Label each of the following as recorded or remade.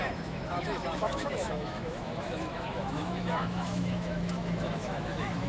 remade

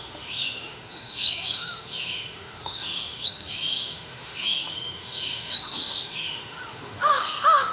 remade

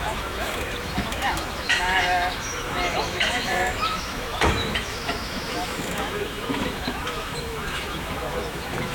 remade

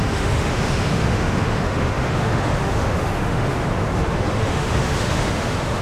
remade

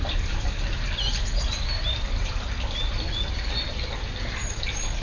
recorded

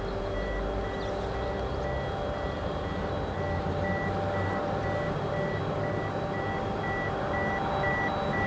recorded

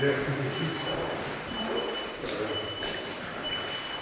recorded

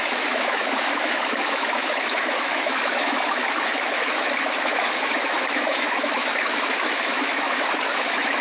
remade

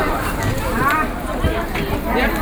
recorded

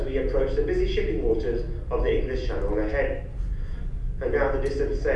recorded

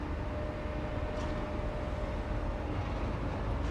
recorded